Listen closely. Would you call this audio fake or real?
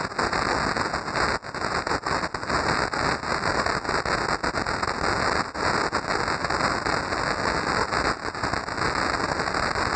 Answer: real